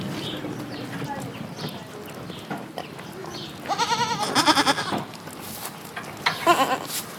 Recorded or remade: recorded